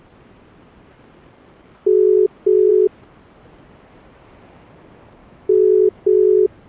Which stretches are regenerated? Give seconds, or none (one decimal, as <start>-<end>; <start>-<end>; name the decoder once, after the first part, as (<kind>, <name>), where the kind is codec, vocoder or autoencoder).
5.2-6.0 (autoencoder, DAC-VAE)